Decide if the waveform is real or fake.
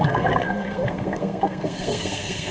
fake